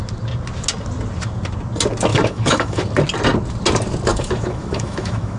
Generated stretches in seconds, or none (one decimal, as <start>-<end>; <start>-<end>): 2.1-2.8; 4.1-5.4